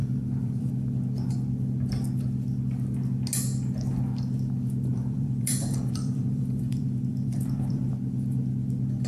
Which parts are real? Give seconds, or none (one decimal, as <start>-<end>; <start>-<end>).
0.7-4.9; 7.9-9.1